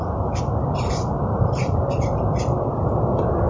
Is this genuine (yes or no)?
no